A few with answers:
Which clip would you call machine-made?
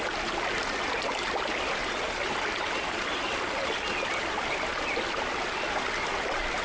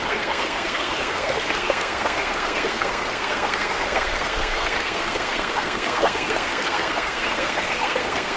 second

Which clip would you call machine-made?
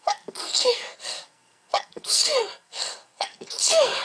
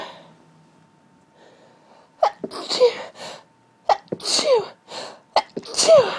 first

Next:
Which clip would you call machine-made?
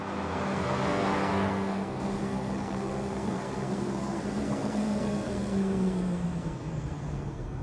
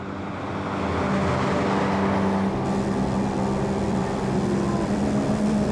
first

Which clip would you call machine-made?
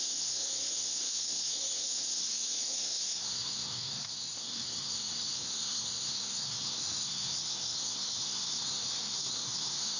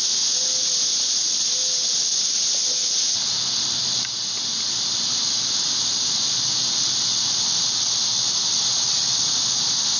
first